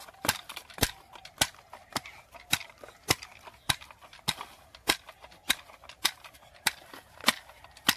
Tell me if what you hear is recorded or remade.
recorded